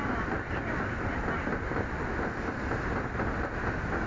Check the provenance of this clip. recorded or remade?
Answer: recorded